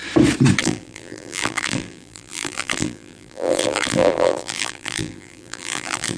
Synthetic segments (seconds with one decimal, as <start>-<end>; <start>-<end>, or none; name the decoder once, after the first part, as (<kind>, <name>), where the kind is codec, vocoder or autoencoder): 0.6-6.2 (vocoder, BigVGAN v2)